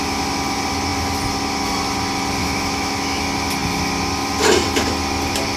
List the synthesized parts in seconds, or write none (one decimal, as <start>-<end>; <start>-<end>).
2.4-3.2